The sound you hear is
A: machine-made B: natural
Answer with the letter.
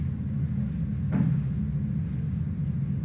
B